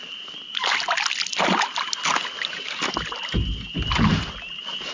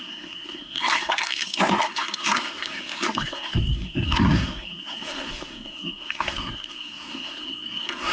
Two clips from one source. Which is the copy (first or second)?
second